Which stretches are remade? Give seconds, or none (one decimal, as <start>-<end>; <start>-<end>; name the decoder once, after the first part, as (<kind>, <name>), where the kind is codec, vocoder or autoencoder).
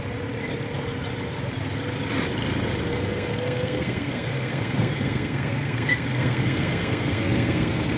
2.9-8.0 (codec, SNAC)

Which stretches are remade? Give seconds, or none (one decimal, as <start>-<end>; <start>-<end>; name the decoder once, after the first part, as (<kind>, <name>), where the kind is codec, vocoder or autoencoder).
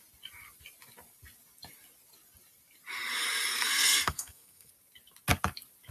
3.5-4.7 (codec, SNAC)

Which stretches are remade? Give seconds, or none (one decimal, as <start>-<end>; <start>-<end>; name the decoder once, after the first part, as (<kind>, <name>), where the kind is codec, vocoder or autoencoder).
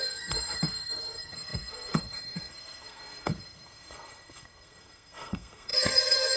0.0-6.4 (codec, SNAC)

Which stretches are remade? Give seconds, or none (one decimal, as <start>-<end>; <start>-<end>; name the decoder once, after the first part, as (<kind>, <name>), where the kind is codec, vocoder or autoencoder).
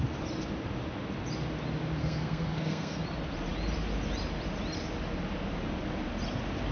2.0-3.0 (codec, SNAC)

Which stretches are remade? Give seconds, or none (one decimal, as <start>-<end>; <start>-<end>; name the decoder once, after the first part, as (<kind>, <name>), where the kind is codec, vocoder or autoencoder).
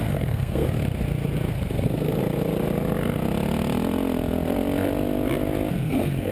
0.0-0.8 (codec, SNAC); 1.5-2.2; 5.7-6.3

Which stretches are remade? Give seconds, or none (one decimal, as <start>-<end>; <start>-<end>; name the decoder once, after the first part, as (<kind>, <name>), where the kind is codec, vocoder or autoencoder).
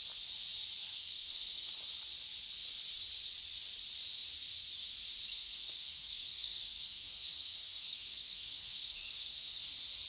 0.8-1.7 (codec, SNAC); 5.3-9.6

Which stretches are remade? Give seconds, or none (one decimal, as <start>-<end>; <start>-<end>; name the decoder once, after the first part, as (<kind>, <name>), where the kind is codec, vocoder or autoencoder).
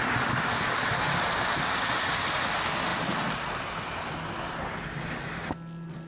none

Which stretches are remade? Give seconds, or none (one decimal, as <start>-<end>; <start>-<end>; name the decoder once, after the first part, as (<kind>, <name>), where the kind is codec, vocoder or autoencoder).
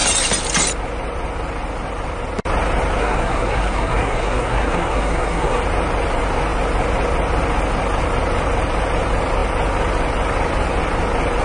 3.0-5.6 (codec, SNAC)